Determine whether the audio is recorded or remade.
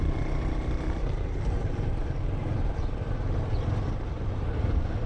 remade